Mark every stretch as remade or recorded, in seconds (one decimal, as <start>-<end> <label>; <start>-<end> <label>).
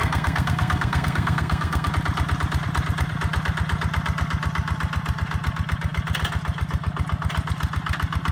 0.0-1.9 remade; 1.9-8.3 recorded